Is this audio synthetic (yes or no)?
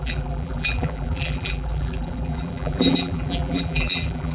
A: yes